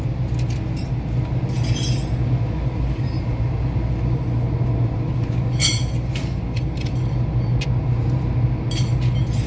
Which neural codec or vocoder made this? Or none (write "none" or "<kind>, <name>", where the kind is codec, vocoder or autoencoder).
none